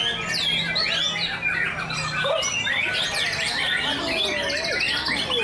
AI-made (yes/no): no